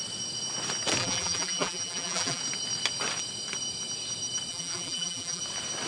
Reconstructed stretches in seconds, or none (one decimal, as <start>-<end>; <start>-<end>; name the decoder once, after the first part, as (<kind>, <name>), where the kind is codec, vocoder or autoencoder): 1.0-2.4 (vocoder, BigVGAN v2); 4.5-5.4